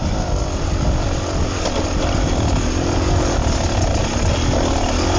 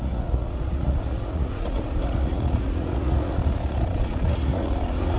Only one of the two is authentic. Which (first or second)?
first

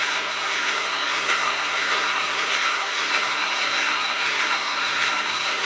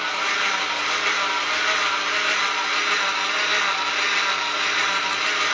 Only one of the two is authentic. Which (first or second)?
second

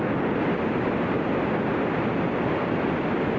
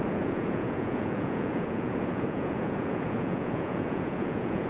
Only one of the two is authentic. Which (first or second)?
first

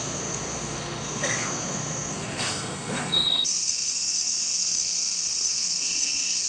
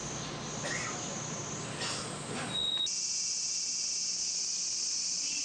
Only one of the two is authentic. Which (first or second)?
second